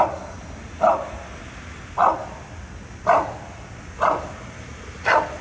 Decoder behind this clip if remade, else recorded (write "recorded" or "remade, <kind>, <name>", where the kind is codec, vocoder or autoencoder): recorded